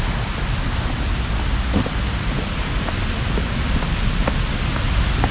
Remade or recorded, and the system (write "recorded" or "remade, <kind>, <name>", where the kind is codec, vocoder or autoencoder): recorded